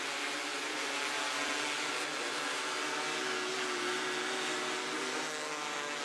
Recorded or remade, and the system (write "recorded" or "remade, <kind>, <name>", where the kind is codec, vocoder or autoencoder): recorded